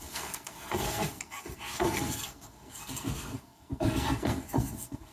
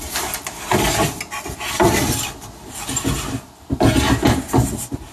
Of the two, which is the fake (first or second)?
first